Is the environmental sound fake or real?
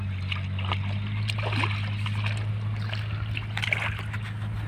real